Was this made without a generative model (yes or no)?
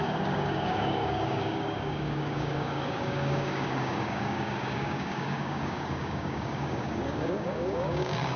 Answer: no